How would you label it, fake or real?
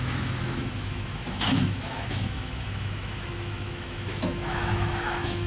fake